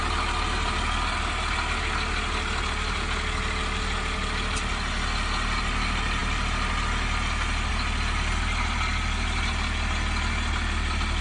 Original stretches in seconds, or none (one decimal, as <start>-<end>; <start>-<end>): 0.0-11.2